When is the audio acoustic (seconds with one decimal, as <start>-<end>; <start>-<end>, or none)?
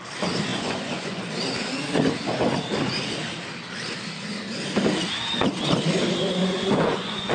0.0-0.5; 1.2-6.4